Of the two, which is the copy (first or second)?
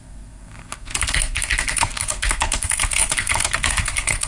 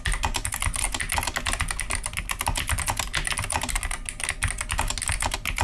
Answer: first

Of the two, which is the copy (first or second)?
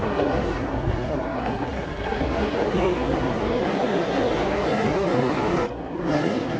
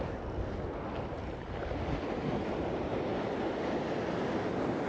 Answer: first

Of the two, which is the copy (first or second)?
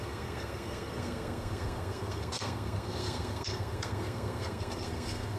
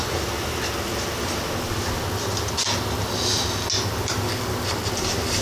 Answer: first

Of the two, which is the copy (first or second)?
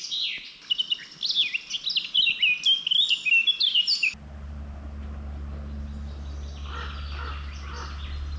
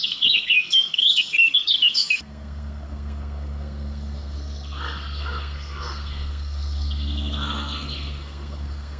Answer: second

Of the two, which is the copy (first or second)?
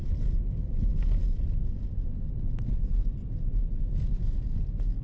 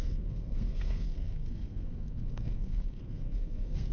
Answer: second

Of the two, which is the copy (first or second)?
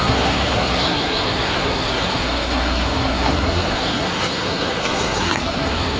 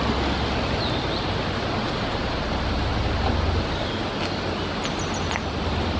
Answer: first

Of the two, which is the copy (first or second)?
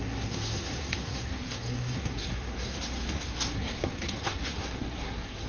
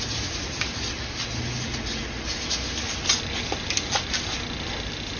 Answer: first